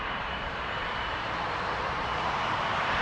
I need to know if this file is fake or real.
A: fake